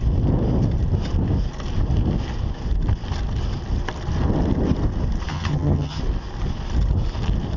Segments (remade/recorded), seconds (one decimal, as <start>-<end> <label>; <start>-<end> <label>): 0.0-5.3 recorded; 5.3-6.0 remade; 6.0-7.6 recorded